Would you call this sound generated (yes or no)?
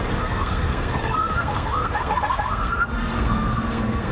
yes